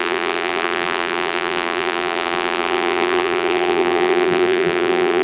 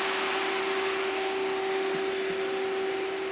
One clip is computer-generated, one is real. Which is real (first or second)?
second